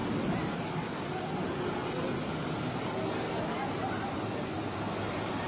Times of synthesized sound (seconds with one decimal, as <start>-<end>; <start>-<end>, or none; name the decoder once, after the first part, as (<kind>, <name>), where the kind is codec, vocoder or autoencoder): none